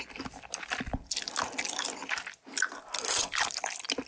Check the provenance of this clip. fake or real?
real